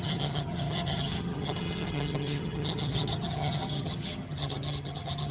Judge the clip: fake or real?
fake